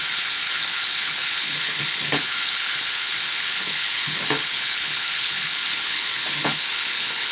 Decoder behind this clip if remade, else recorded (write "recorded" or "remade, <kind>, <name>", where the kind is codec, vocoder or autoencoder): remade, codec, HILCodec